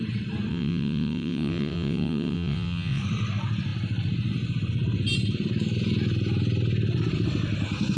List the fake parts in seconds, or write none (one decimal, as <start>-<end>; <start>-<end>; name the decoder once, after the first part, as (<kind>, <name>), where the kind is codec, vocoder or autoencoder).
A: 0.5-3.0 (vocoder, WaveNeXt)